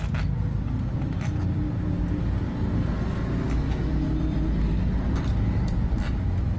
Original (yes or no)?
yes